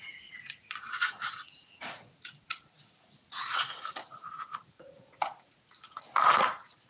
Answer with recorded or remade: remade